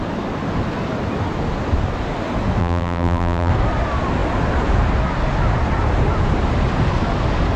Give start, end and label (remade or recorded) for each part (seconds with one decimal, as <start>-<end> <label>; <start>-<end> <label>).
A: 0.0-2.6 recorded; 2.6-3.5 remade; 3.5-7.6 recorded